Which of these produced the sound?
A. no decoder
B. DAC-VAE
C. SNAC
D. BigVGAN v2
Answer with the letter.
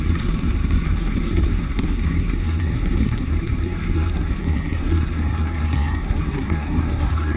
C